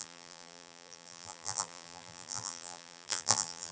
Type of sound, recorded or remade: remade